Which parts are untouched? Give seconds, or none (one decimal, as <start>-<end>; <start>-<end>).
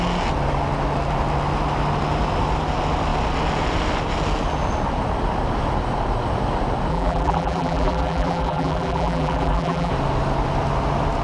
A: 0.0-6.9; 9.9-11.2